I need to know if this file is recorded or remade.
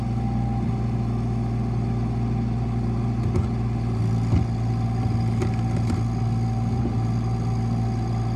recorded